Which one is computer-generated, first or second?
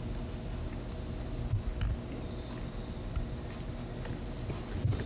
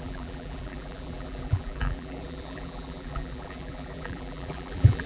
second